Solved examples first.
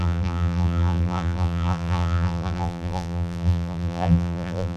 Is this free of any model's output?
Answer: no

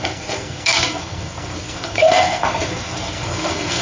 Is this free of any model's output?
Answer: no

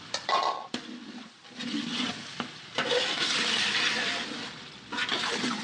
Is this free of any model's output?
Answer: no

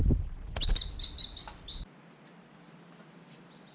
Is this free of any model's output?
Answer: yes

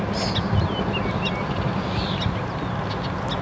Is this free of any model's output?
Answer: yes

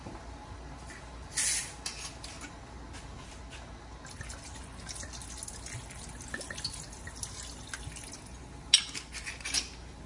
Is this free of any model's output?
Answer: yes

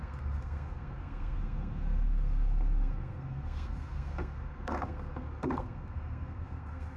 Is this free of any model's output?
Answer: no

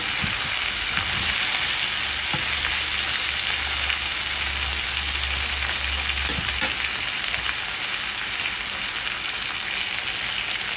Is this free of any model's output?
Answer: yes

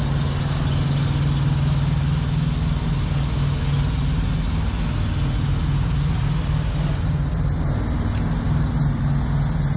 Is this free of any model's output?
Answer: yes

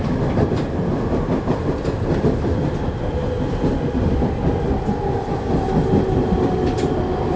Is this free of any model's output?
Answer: no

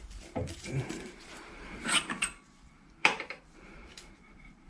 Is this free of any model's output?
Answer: no